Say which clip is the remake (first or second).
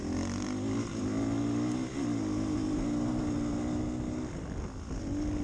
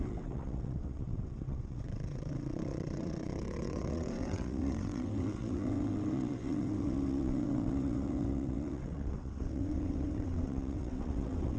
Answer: second